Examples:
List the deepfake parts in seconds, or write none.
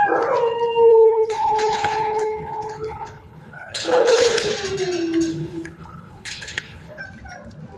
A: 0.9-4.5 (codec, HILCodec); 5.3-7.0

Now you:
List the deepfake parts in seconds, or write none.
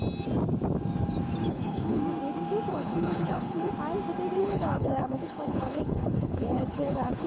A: 1.5-2.0 (codec, HILCodec); 2.7-3.7; 4.4-7.3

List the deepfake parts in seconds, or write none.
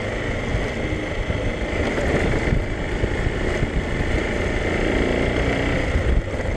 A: none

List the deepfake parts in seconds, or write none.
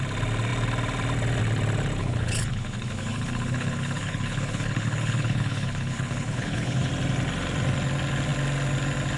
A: 2.0-6.9 (codec, HILCodec)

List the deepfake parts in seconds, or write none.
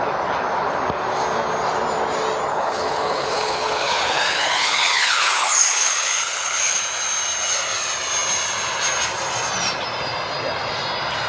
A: 2.5-6.8 (codec, HILCodec)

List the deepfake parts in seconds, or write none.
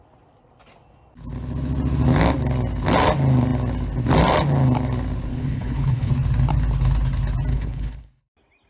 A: 5.3-6.1 (codec, HILCodec); 7.5-8.2